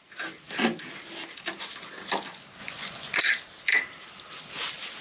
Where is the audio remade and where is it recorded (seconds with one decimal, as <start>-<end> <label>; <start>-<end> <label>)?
0.0-2.6 recorded; 2.6-3.2 remade; 3.2-5.0 recorded